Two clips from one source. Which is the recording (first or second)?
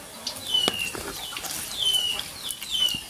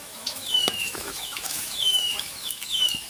first